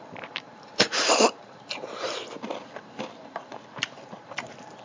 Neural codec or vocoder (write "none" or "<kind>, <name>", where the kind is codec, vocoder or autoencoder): vocoder, BigVGAN v2